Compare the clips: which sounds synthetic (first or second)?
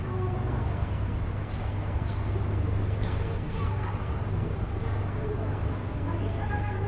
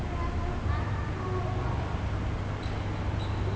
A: first